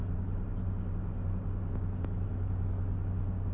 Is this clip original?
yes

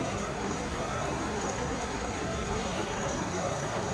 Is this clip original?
no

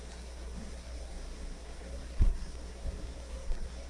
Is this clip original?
no